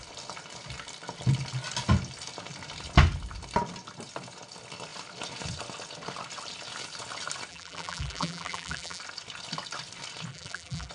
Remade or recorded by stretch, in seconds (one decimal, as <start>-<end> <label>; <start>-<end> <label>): 0.0-7.5 recorded; 7.5-9.0 remade; 9.0-10.3 recorded; 10.3-10.9 remade